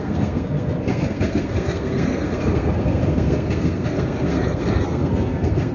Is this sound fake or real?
fake